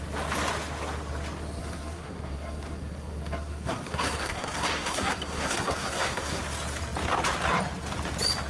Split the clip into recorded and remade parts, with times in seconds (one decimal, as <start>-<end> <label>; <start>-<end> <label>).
0.0-1.6 recorded; 1.6-6.4 remade; 6.4-8.5 recorded